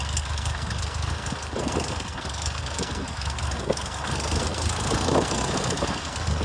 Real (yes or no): no